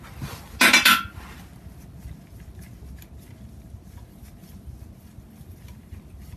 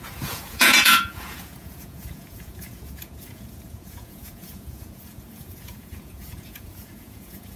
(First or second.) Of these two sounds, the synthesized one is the second